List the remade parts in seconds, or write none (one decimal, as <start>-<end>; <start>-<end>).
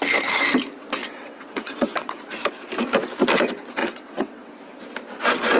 1.0-2.2; 3.8-4.5